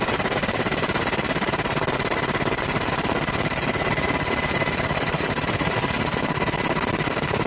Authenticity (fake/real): fake